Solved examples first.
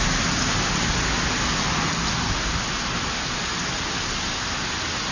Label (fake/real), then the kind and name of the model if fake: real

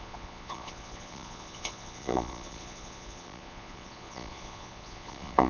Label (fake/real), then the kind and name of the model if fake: fake, vocoder, Vocos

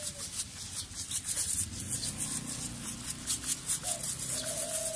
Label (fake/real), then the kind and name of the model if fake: real